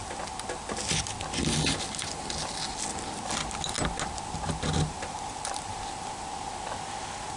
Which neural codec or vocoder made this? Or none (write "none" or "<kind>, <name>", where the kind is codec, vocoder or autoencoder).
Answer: none